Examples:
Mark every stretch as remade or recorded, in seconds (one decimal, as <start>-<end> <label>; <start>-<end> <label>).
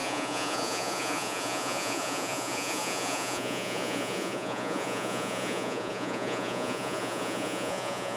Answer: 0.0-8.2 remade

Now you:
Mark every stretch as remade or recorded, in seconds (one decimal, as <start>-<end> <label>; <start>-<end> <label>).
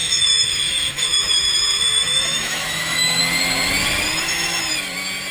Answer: 0.0-3.2 remade; 3.2-5.3 recorded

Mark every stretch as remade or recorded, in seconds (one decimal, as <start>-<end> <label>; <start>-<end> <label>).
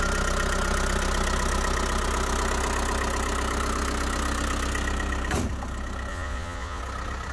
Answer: 0.0-6.1 recorded; 6.1-6.8 remade; 6.8-7.3 recorded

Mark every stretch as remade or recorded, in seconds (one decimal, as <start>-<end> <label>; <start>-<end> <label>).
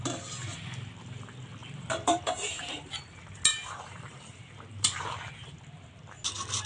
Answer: 0.0-1.6 recorded; 1.6-2.9 remade; 2.9-3.5 recorded; 3.5-5.0 remade; 5.0-6.7 recorded